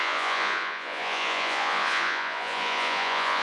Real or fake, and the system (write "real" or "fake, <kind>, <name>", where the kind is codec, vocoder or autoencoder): fake, vocoder, Vocos